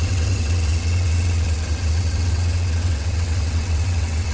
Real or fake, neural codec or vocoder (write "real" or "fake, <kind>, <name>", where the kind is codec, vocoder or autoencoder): fake, vocoder, WaveNeXt